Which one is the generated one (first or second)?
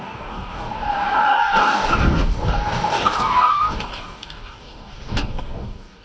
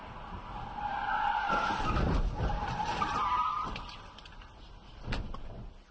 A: first